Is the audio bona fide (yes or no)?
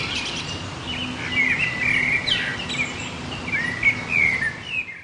yes